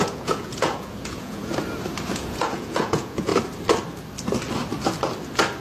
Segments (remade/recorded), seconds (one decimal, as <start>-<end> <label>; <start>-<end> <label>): 0.0-1.4 remade; 1.4-2.1 recorded; 2.1-3.3 remade; 3.3-5.6 recorded